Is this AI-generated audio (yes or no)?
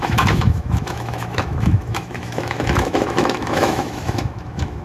yes